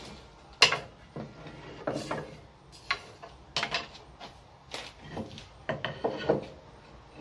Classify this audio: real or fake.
real